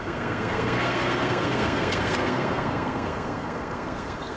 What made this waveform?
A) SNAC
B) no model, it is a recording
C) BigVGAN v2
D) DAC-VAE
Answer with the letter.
A